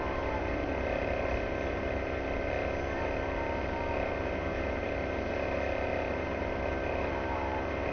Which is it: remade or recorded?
remade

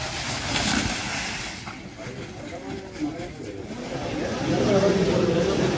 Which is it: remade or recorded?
recorded